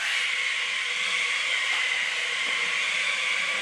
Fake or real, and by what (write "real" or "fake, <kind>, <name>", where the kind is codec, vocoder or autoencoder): fake, vocoder, BigVGAN v2